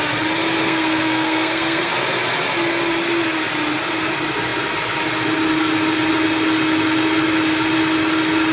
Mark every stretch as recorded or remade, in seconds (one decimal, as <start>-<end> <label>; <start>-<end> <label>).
0.0-0.6 recorded; 0.6-1.9 remade; 1.9-8.5 recorded